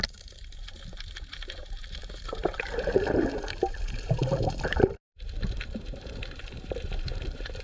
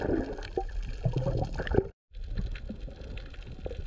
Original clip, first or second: second